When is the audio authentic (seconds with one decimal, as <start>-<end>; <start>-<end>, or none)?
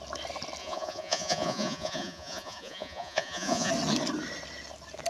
0.0-0.6; 3.7-5.1